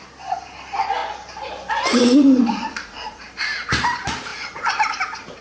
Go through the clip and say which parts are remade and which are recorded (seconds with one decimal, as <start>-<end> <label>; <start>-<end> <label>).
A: 0.0-1.9 recorded; 1.9-3.2 remade; 3.2-5.4 recorded